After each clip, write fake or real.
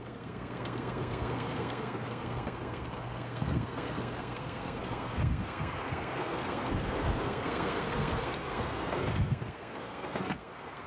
fake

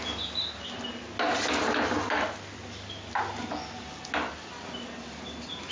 real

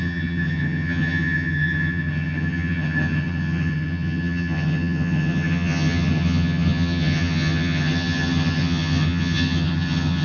fake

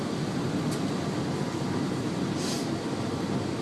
real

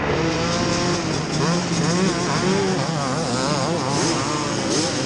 real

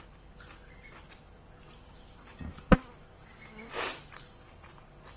real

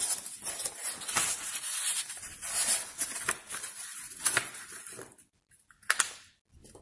real